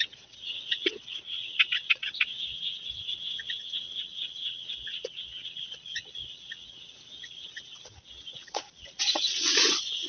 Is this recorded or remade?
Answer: remade